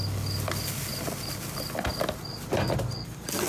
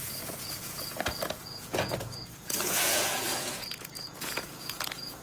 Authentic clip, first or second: first